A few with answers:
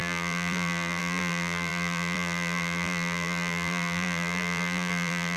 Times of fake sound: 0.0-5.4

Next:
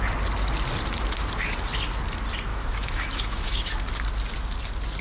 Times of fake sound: 2.5-3.7